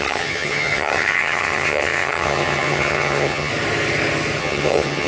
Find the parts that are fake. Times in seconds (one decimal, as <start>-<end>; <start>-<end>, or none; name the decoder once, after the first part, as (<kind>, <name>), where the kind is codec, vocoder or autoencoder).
0.0-3.5 (vocoder, HiFi-GAN); 4.4-5.1